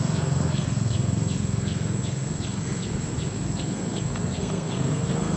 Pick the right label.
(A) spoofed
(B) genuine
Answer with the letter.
A